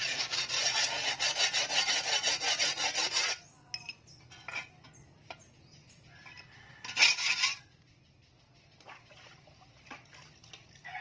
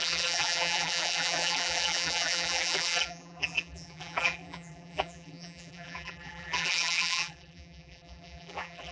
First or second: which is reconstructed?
second